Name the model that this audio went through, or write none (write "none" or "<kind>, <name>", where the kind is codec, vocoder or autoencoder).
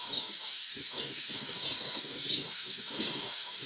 codec, DAC